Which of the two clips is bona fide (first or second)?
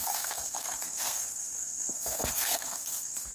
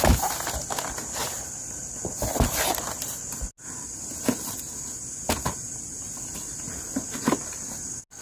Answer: second